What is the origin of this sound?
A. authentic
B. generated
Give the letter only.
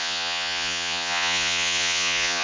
B